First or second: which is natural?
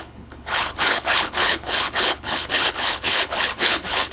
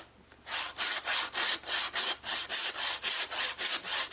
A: second